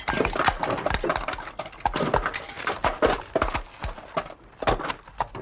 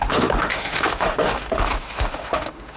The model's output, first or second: second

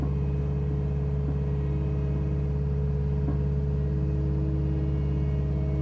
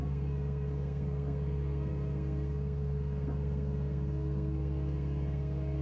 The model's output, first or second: second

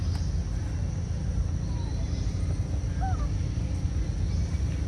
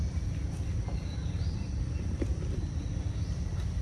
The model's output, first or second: second